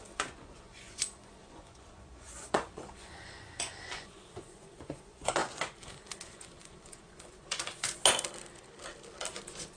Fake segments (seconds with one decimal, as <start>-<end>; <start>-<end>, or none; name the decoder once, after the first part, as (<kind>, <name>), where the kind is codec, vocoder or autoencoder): 0.0-8.0 (vocoder, Vocos); 9.3-9.8